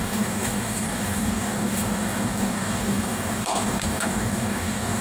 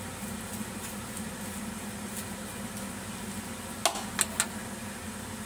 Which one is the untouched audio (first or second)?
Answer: second